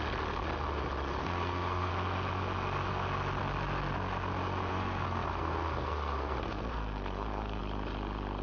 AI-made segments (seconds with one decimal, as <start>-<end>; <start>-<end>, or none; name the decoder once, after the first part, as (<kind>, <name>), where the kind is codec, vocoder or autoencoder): 1.2-1.9 (codec, SNAC); 4.7-7.6

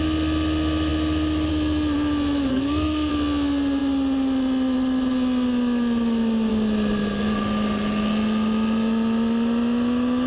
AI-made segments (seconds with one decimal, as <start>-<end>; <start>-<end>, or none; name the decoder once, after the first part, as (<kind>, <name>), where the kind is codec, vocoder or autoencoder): 2.5-3.1 (codec, SNAC)

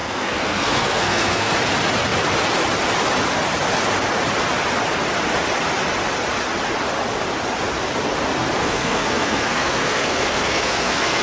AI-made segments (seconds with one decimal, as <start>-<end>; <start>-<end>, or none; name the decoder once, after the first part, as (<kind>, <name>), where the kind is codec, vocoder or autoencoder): 0.0-1.5 (codec, SNAC); 8.6-11.2

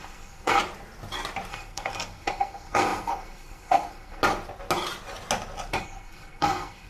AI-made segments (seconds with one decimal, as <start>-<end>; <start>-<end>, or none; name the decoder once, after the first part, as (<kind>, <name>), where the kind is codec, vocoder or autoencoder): 0.0-0.6 (codec, SNAC); 1.5-4.2; 5.7-6.9

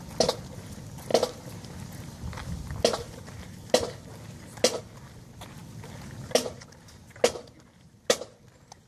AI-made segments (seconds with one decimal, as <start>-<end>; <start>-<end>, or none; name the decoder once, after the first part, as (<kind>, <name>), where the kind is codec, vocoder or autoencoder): none

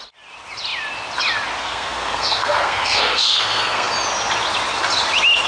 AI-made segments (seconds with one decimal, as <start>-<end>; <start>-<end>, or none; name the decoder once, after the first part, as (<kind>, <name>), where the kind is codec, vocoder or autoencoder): 1.6-3.9 (codec, SNAC)

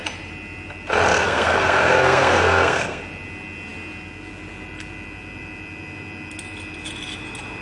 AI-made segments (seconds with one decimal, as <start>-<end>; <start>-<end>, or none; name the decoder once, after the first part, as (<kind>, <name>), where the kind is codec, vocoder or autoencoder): 1.1-3.0 (codec, SNAC)